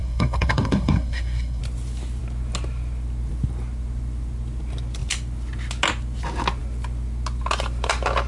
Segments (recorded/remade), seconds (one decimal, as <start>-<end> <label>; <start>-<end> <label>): 0.0-1.6 remade; 1.6-8.3 recorded